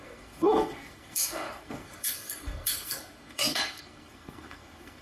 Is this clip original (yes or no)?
no